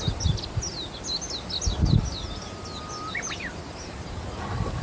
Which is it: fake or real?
real